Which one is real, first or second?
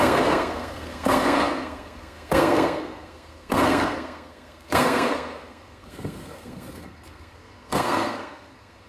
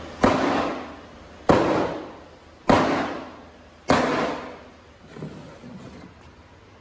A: second